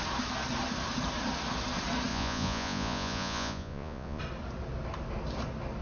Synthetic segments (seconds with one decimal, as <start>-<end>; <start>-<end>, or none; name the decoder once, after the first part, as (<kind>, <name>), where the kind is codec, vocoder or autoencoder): 2.1-4.2 (vocoder, Vocos)